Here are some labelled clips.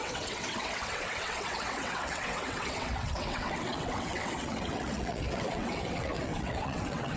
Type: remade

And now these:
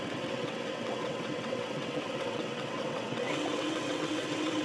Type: remade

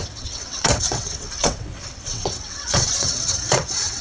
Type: remade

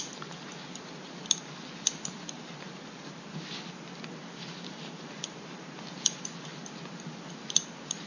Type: recorded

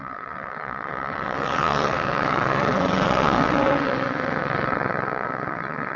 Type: remade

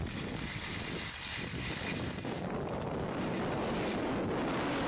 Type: recorded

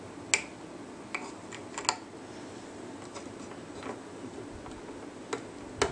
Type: recorded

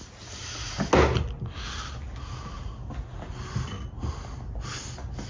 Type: recorded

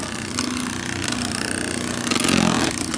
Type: recorded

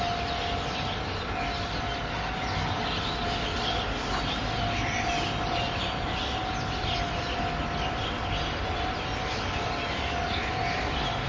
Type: recorded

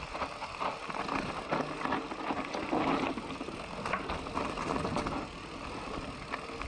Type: recorded